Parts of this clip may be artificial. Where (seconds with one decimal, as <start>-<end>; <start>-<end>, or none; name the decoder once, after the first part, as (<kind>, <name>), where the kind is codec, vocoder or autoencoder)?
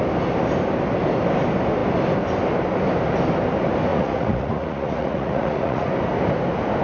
3.9-5.9 (vocoder, Vocos)